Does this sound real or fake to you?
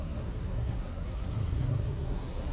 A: fake